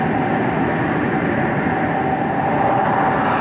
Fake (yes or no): no